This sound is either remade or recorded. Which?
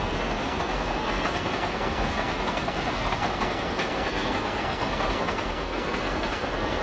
remade